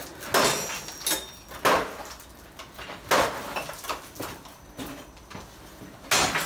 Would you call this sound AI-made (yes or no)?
no